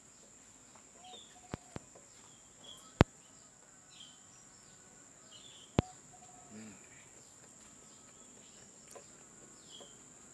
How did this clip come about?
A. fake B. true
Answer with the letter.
B